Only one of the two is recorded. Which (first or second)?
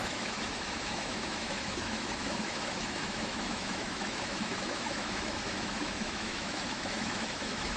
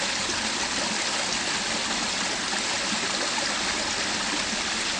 second